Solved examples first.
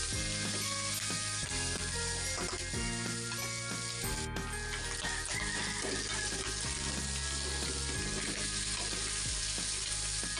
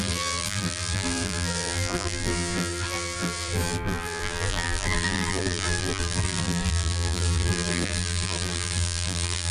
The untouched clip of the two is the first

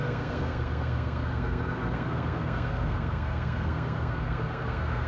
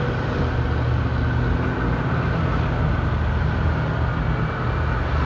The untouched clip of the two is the second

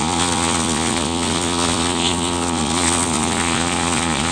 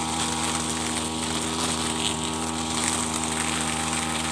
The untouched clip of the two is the second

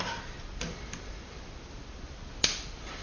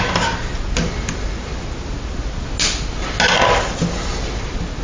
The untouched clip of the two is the second